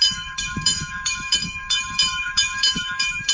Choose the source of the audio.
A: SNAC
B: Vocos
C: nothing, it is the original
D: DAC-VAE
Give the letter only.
D